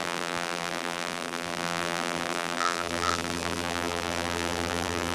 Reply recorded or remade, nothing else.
remade